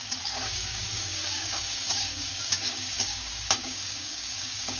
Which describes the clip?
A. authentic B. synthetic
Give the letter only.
B